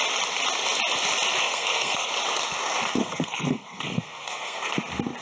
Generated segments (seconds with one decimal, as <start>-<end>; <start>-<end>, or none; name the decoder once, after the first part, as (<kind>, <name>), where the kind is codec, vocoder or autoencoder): 1.4-2.1 (codec, SNAC); 3.0-4.7